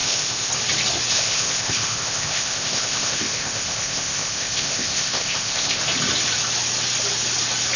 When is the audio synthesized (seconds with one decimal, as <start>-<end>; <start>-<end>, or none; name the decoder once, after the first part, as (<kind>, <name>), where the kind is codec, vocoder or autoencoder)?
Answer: 0.0-0.5 (codec, ZipCodec); 1.1-5.8